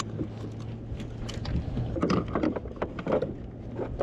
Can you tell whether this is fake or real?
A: real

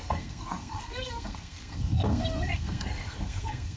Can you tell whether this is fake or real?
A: fake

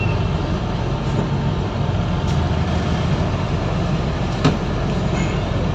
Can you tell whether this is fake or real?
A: real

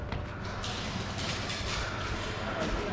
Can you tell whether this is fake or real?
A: real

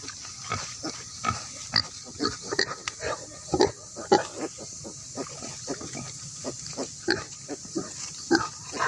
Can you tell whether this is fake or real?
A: real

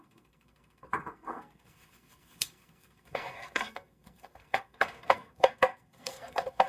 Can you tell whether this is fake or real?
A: fake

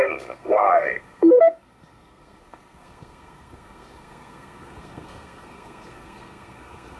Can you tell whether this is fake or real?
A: fake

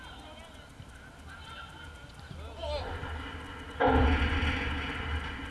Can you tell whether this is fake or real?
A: real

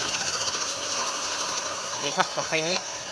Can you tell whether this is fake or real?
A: fake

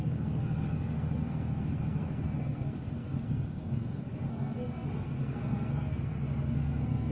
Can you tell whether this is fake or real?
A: fake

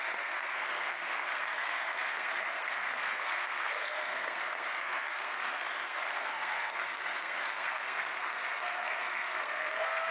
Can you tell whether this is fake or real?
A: fake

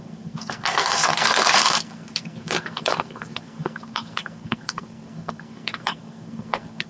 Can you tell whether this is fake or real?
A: fake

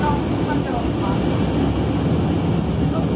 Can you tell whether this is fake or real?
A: real